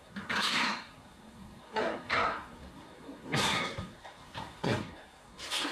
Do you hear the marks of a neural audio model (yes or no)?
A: yes